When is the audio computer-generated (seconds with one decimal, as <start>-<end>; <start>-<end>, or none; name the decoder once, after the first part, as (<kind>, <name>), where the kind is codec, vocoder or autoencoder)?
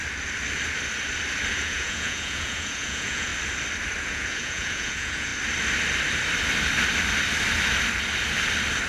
1.5-3.3 (vocoder, Vocos); 4.0-5.3